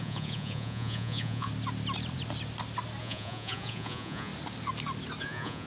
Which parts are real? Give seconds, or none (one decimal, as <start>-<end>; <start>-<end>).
1.5-3.0; 4.3-5.2